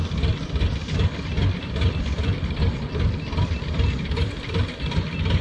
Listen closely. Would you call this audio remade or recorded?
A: recorded